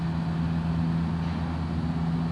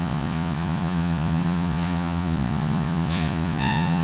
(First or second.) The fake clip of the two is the second